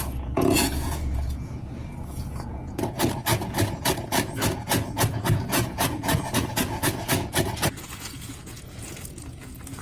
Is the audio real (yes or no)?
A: no